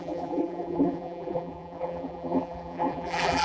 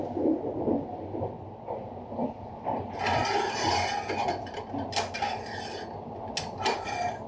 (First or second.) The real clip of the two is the second